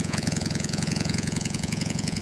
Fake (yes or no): yes